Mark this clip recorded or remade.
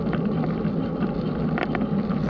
recorded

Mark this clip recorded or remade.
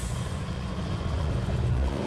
remade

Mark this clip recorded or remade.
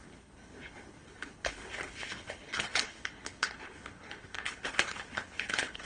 remade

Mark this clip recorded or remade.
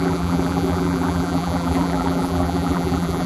remade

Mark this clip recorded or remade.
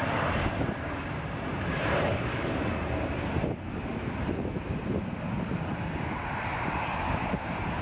remade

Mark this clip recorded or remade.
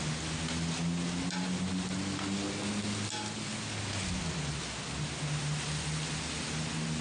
recorded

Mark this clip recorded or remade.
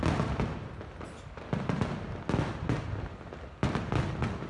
recorded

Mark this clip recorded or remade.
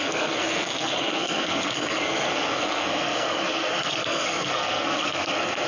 remade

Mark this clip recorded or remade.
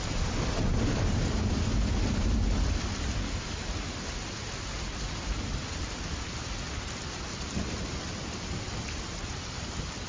remade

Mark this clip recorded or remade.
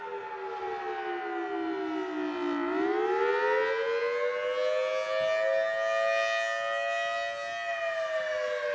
recorded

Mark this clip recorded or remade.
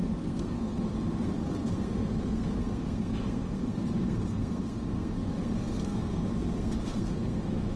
remade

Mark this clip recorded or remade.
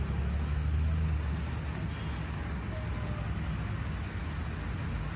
recorded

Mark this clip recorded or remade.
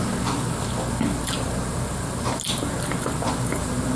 recorded